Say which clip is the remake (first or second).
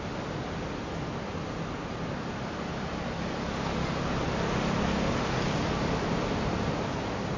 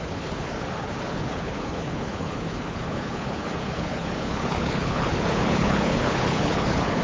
second